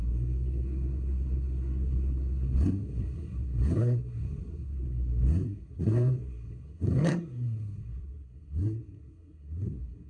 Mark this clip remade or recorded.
remade